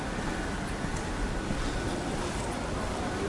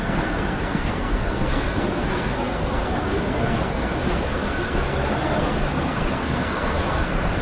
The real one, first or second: first